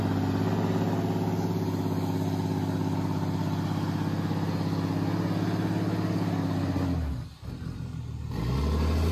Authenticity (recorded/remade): recorded